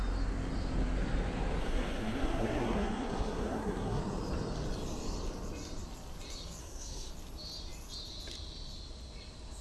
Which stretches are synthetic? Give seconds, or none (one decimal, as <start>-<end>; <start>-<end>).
1.6-4.0; 6.6-7.1